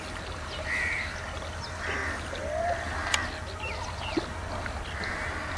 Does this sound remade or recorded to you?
recorded